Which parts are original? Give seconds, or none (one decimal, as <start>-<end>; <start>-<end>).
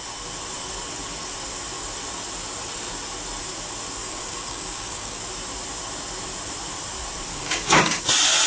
0.0-4.0; 5.2-7.3; 8.0-8.5